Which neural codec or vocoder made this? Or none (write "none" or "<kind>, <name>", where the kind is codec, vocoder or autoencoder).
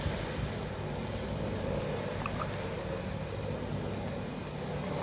none